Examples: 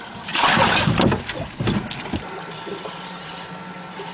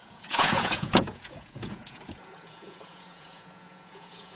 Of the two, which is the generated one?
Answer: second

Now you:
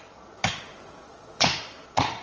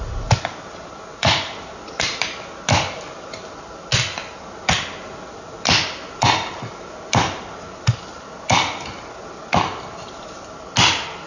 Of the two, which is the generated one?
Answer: first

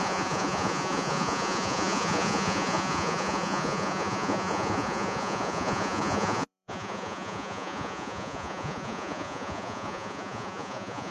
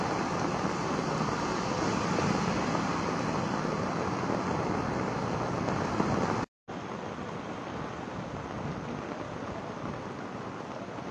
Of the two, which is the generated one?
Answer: first